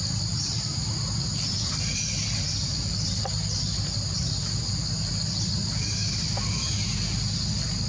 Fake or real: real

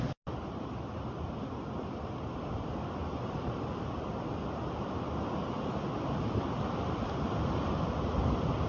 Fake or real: real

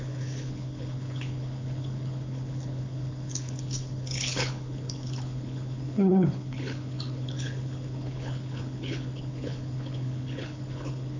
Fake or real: fake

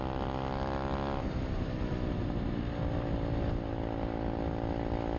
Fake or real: real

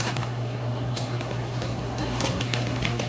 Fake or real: fake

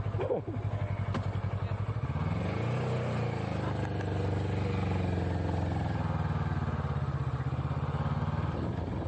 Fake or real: real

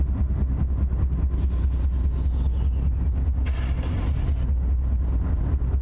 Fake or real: real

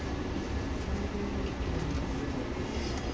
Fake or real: real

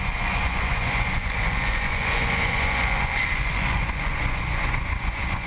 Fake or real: fake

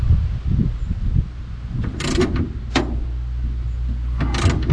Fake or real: real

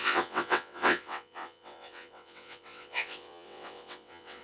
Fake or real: fake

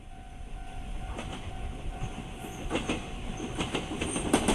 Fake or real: real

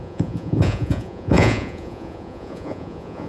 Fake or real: fake